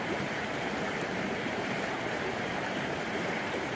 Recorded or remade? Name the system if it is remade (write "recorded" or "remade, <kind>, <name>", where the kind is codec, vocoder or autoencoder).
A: remade, vocoder, BigVGAN v2